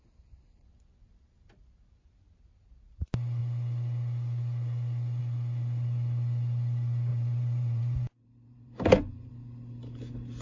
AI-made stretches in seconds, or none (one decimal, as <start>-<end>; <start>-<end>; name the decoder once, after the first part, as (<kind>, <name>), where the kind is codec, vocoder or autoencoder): 7.1-9.3 (vocoder, BigVGAN v2)